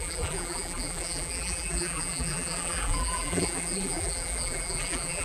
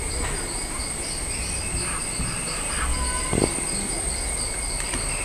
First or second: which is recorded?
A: second